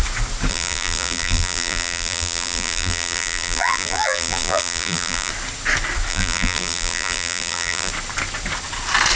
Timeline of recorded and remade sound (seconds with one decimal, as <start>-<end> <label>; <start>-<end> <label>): 0.0-0.5 recorded; 0.5-5.3 remade; 5.3-6.1 recorded; 6.1-7.9 remade; 7.9-9.2 recorded

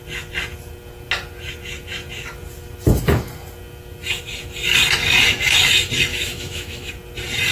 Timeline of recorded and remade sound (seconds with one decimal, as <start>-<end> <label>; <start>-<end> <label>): 0.0-6.1 recorded; 6.1-6.9 remade; 6.9-7.5 recorded

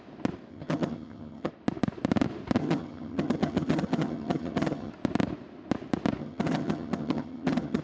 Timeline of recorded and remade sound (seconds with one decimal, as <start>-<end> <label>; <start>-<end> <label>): 0.0-0.5 recorded; 0.5-1.5 remade; 1.5-2.6 recorded; 2.6-4.9 remade; 4.9-6.2 recorded; 6.2-7.8 remade

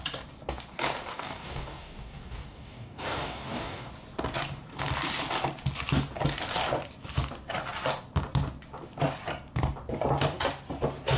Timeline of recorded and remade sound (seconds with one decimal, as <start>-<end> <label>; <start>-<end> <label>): 0.0-1.1 recorded; 1.1-3.9 remade; 3.9-11.2 recorded

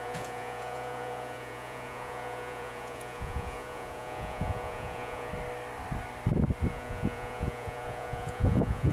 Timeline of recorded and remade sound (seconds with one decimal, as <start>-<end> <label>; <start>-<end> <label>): 0.0-5.3 remade; 5.3-6.7 recorded; 6.7-8.9 remade